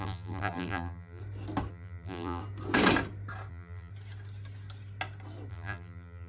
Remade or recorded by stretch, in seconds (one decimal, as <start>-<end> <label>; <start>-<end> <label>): 0.0-1.2 remade; 1.2-1.7 recorded; 1.7-2.4 remade; 2.4-3.5 recorded; 3.5-3.9 remade; 3.9-5.5 recorded; 5.5-6.3 remade